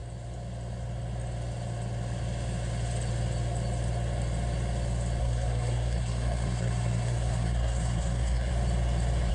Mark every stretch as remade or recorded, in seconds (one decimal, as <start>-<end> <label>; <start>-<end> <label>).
0.0-5.2 recorded; 5.2-8.5 remade; 8.5-9.3 recorded